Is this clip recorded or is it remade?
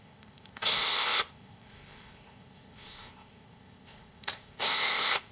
remade